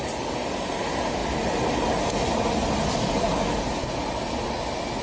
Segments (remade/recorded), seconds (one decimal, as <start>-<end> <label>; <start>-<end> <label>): 0.0-5.0 recorded